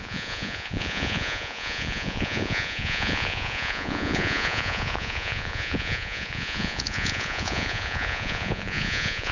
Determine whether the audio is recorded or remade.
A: remade